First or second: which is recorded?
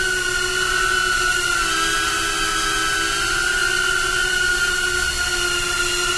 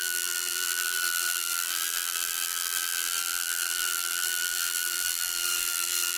first